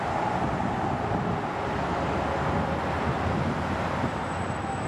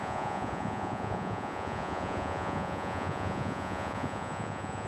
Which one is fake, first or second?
second